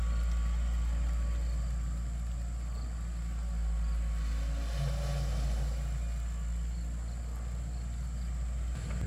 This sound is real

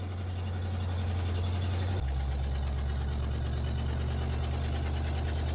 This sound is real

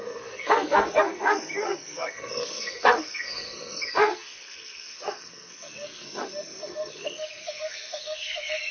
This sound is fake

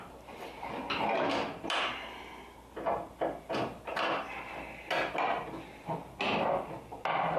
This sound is real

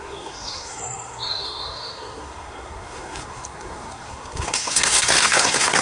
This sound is fake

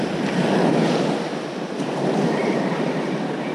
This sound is real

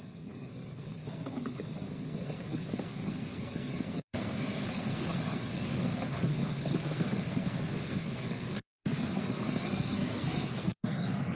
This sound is fake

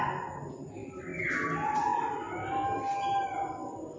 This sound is real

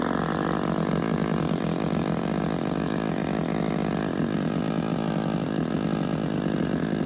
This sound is real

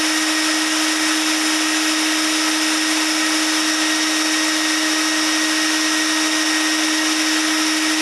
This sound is real